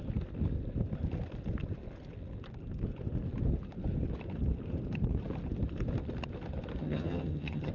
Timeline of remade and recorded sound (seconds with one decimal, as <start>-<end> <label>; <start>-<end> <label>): 0.0-6.8 recorded; 6.8-7.7 remade